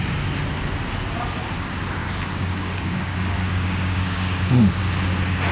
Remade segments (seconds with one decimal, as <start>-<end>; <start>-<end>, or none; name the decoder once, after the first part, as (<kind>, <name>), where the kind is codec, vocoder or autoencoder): 2.0-4.8 (codec, DAC)